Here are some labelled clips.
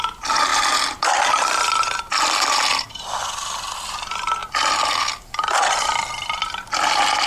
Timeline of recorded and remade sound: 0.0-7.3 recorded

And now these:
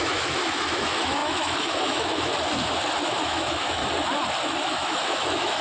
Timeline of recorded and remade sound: 0.0-2.3 remade; 2.3-3.0 recorded; 3.0-3.8 remade; 3.8-4.6 recorded; 4.6-5.6 remade